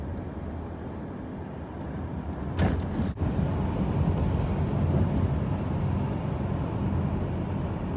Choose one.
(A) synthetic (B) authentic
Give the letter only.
B